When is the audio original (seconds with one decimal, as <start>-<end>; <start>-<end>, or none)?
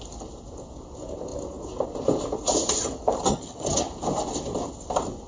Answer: 0.0-3.3; 3.9-5.3